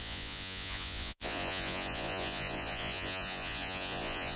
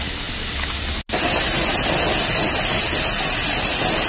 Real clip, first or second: second